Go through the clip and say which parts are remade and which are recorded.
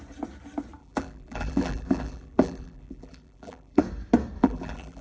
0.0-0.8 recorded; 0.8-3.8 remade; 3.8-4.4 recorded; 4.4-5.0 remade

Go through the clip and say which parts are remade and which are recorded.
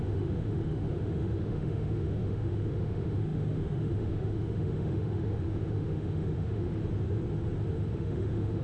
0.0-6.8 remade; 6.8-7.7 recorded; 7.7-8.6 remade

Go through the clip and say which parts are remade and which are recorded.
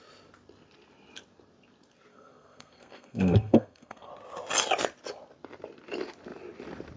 0.0-2.1 recorded; 2.1-4.1 remade; 4.1-7.0 recorded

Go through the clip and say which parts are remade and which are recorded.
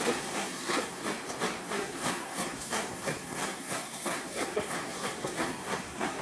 0.0-1.0 remade; 1.0-1.7 recorded; 1.7-6.2 remade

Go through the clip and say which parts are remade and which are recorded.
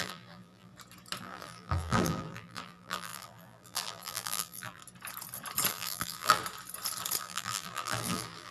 0.0-0.7 remade; 0.7-1.2 recorded; 1.2-4.8 remade; 4.8-5.7 recorded; 5.7-6.4 remade; 6.4-7.2 recorded; 7.2-8.5 remade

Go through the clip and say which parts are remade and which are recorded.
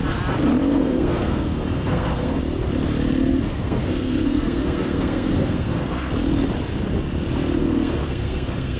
0.0-0.7 recorded; 0.7-2.4 remade; 2.4-3.3 recorded; 3.3-6.1 remade; 6.1-7.6 recorded; 7.6-8.8 remade